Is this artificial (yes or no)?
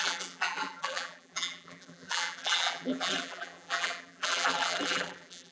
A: yes